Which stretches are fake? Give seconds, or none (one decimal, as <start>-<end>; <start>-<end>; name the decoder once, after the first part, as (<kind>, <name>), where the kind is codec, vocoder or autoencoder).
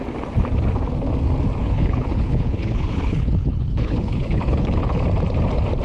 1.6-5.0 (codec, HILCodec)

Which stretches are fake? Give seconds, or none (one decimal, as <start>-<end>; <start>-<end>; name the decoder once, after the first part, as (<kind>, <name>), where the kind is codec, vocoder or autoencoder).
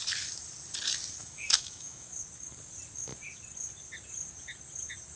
1.2-2.1 (autoencoder, DAC-VAE)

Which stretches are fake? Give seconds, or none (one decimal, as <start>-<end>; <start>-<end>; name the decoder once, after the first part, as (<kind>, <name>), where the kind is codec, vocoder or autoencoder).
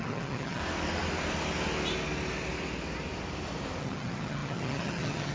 0.0-0.6 (vocoder, HiFi-GAN); 3.8-5.3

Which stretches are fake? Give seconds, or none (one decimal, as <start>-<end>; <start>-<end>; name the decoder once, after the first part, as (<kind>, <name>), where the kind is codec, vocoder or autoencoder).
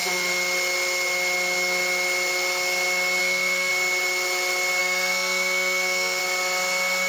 3.2-3.7 (codec, SNAC); 4.8-6.2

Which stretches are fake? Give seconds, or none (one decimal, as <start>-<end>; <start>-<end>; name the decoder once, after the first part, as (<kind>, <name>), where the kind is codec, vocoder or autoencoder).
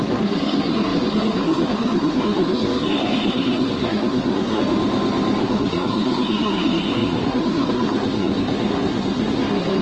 0.0-4.6 (codec, SNAC); 5.4-9.8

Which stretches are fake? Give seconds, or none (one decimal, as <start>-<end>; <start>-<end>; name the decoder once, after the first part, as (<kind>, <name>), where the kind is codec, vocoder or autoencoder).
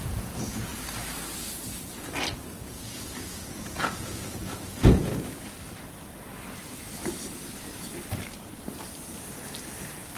0.0-0.7 (vocoder, Vocos); 2.6-5.1